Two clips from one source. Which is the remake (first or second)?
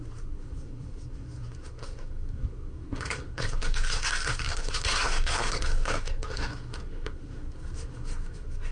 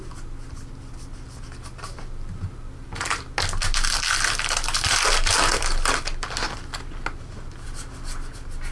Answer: first